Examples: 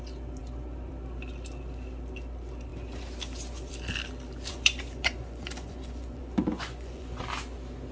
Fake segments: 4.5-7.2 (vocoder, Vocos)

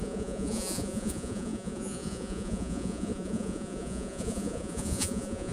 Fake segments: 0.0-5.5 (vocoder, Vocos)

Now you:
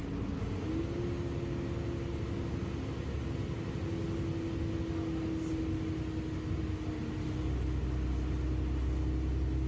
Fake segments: none

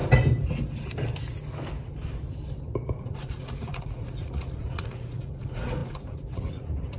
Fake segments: 3.0-7.0 (vocoder, Vocos)